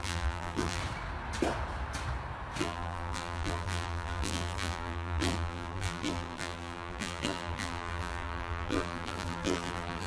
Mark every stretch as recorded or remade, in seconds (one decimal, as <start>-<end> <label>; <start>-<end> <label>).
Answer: 0.0-0.8 remade; 0.8-2.6 recorded; 2.6-10.1 remade